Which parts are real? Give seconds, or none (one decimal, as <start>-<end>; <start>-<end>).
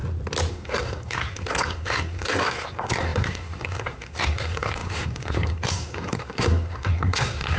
0.0-0.5